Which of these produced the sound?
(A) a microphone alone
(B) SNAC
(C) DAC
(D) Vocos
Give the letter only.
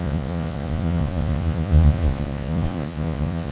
D